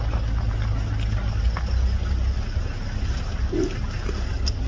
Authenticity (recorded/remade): recorded